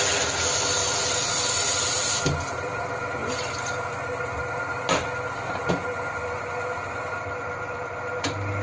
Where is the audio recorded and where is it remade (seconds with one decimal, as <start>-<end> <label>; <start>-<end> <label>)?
0.0-0.8 recorded; 0.8-2.8 remade; 2.8-8.6 recorded